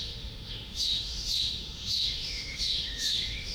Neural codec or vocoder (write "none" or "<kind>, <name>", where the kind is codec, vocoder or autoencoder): autoencoder, DAC-VAE